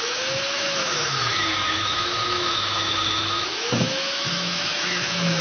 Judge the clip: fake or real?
fake